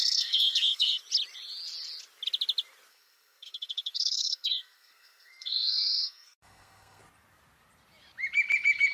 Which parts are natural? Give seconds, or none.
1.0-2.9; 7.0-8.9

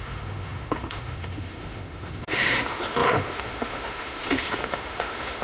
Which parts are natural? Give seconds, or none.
none

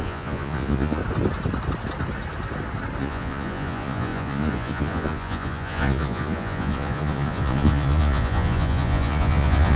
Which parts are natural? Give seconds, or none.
1.0-3.0

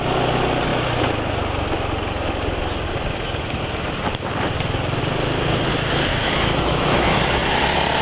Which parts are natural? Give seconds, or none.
0.0-6.1; 7.2-8.0